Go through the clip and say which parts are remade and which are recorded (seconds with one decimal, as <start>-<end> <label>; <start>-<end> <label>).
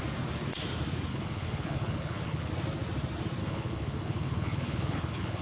0.0-1.1 recorded; 1.1-2.5 remade; 2.5-3.4 recorded; 3.4-5.4 remade